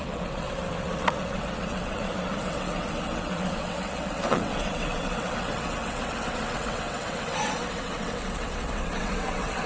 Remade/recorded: remade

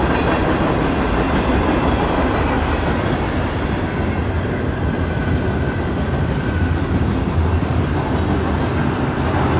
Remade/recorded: recorded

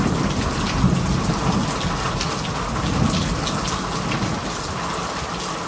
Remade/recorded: recorded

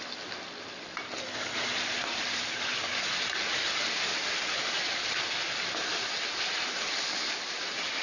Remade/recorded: recorded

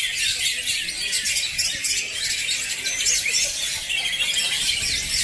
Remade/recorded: recorded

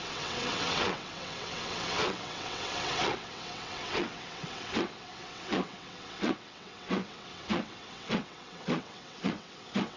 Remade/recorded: remade